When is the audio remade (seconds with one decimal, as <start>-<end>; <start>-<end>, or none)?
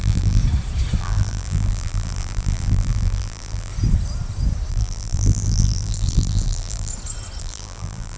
0.0-0.4; 1.0-3.7; 4.7-6.9; 7.4-8.2